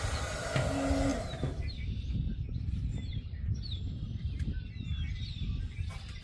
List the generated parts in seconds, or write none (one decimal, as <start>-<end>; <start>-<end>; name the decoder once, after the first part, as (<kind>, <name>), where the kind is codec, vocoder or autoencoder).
1.1-4.0 (vocoder, BigVGAN v2)